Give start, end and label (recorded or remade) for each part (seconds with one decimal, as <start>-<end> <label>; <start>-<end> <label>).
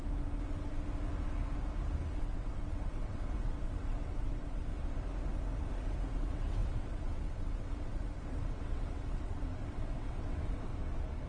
0.0-2.2 recorded; 2.2-4.7 remade; 4.7-6.1 recorded; 6.1-10.7 remade; 10.7-11.3 recorded